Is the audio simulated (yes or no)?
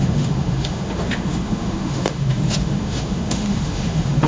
yes